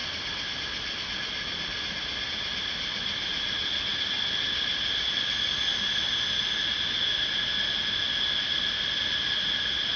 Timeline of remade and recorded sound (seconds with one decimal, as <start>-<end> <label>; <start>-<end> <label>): 0.0-10.0 recorded